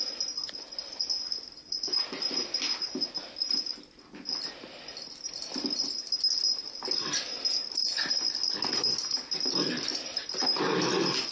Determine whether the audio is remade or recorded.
recorded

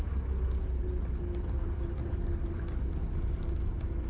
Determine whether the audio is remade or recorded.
recorded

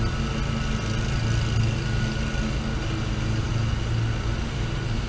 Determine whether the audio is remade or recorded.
recorded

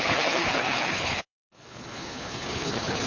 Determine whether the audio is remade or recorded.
remade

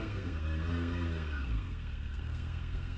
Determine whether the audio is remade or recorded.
remade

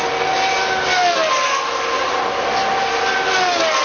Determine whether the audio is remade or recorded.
recorded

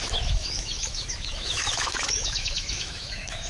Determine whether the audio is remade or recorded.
remade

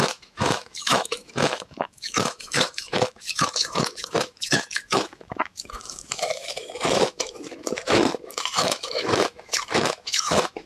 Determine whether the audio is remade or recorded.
remade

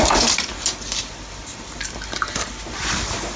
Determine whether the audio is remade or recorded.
recorded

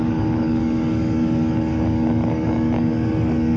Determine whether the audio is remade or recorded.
remade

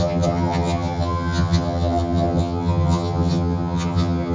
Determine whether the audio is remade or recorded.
remade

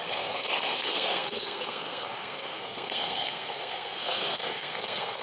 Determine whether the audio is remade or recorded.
remade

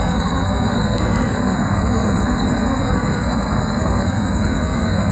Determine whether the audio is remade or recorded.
remade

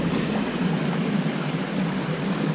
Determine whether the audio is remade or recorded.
recorded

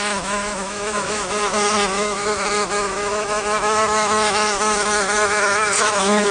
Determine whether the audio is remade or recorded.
remade